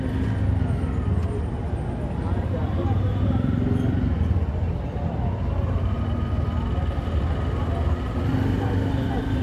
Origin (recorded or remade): recorded